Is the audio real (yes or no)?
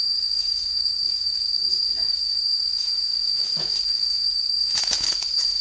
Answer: no